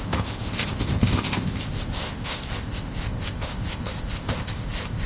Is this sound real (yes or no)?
no